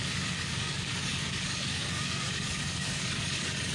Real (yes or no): no